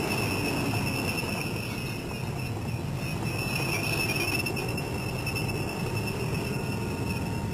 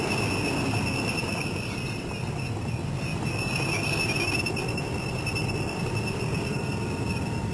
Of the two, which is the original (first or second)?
first